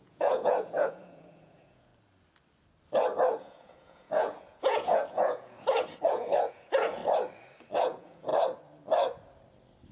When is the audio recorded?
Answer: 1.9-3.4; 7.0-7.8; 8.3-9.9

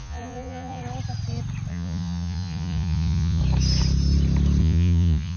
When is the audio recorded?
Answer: 0.8-1.7; 3.4-4.6

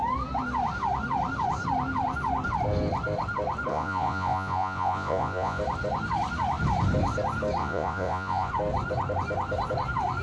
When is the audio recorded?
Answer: 0.0-3.7; 5.6-7.6; 8.5-10.2

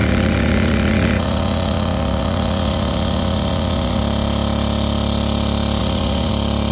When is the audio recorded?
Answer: 4.0-5.8; 6.3-6.7

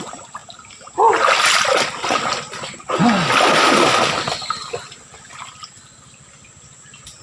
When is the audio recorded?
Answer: 0.0-7.2

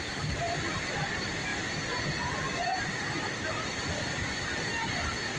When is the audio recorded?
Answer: 0.0-5.4

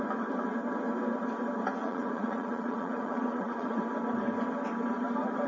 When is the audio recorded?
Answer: 0.0-1.8; 3.8-5.5